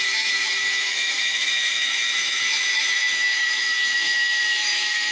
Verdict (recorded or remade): remade